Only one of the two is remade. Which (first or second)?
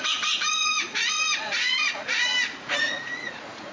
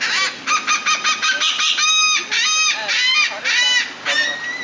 first